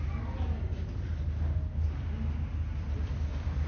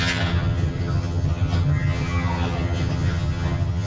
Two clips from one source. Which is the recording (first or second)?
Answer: first